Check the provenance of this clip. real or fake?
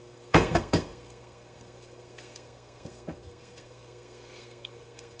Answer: fake